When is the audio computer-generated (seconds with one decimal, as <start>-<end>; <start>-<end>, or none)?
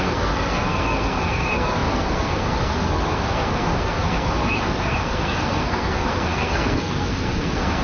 0.0-7.8